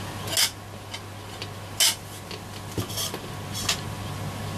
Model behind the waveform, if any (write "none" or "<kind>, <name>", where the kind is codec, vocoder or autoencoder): none